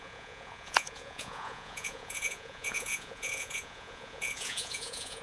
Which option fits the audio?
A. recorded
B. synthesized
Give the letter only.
B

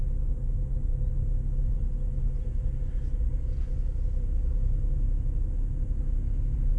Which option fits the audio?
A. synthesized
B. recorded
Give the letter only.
B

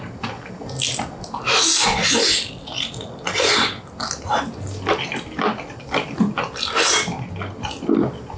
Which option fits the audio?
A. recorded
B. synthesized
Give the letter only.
A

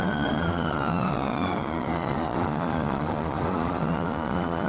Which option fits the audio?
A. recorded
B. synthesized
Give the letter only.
B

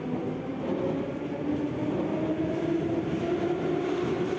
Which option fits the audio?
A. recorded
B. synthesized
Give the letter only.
A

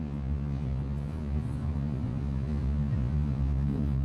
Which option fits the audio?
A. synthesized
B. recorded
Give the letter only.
A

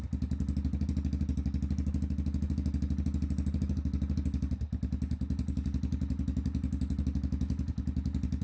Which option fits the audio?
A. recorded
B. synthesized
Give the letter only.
A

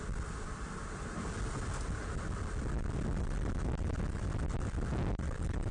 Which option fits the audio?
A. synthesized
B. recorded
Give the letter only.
B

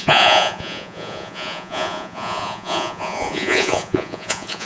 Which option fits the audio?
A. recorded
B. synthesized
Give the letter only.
B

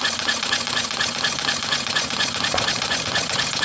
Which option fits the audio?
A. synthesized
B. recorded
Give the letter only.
A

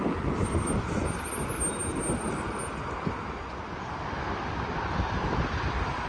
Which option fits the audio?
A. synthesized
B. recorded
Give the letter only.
B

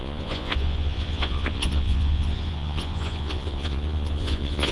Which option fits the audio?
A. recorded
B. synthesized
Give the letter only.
B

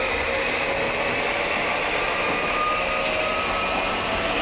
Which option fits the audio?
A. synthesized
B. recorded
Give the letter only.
B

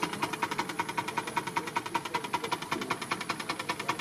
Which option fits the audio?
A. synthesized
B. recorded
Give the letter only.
B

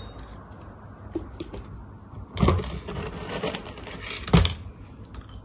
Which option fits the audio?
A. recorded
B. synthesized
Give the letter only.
A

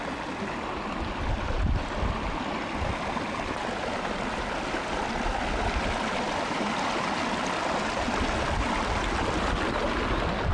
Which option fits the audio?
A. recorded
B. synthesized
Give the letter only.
A